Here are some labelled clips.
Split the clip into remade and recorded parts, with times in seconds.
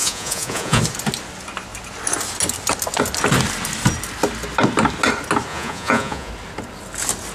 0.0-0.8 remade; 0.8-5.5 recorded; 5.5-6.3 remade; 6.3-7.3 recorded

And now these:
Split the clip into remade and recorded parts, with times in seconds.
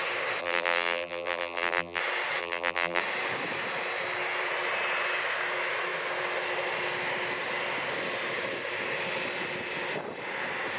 0.0-0.4 recorded; 0.4-2.0 remade; 2.0-2.4 recorded; 2.4-3.0 remade; 3.0-10.8 recorded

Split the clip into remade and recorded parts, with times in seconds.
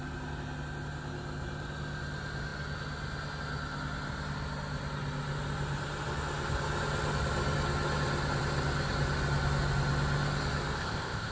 0.0-10.8 recorded; 10.8-11.3 remade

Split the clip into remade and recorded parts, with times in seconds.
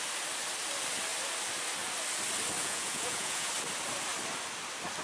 0.0-2.6 recorded; 2.6-3.5 remade; 3.5-5.0 recorded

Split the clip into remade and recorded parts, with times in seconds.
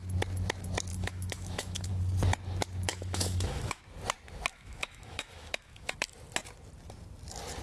0.0-0.9 recorded; 0.9-1.9 remade; 1.9-2.9 recorded; 2.9-3.8 remade; 3.8-4.5 recorded; 4.5-5.9 remade; 5.9-7.6 recorded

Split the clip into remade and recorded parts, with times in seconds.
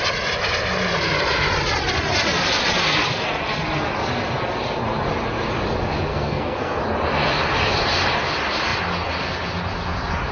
0.0-6.1 recorded; 6.1-6.8 remade; 6.8-10.3 recorded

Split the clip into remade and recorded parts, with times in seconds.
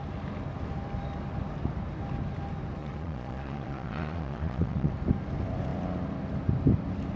0.0-2.8 recorded; 2.8-4.9 remade; 4.9-7.2 recorded